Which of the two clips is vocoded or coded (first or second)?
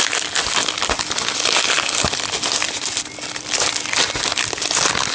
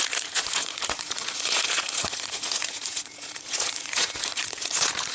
second